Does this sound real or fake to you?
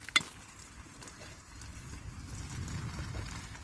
real